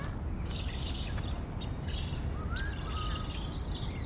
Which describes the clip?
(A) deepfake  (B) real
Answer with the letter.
B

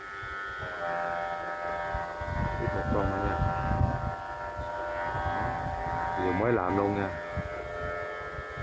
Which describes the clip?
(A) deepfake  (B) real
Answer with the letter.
B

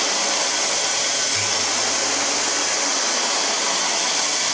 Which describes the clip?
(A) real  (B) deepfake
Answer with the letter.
A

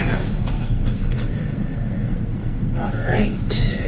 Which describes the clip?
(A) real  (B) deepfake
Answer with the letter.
B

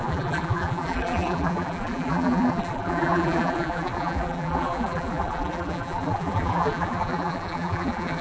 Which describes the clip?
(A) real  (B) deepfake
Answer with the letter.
B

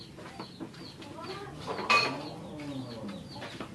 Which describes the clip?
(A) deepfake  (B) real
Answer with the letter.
B